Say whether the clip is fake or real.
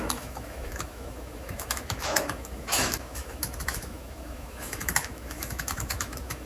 fake